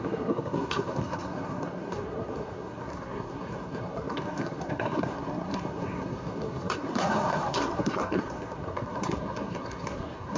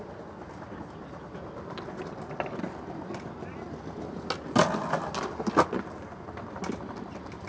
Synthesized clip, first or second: first